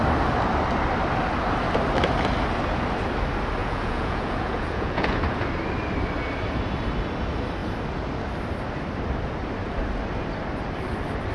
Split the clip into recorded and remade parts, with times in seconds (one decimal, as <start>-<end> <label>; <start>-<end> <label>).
0.0-3.6 recorded; 3.6-5.2 remade; 5.2-11.3 recorded